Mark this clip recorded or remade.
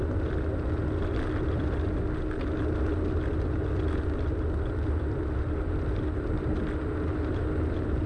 recorded